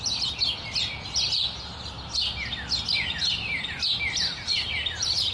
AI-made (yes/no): no